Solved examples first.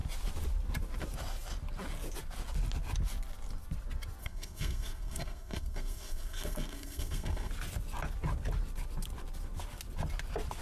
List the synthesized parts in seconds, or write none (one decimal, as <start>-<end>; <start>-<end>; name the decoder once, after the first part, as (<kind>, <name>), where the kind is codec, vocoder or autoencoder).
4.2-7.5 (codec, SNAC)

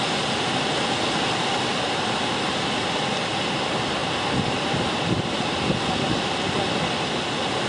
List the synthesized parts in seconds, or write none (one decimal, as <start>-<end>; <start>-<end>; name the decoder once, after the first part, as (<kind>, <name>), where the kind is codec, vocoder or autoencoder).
none

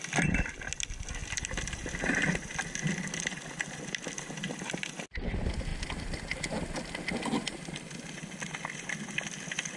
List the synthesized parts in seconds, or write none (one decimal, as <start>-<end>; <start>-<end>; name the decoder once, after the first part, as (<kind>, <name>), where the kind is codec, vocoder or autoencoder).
1.2-4.7 (vocoder, BigVGAN v2); 7.3-7.9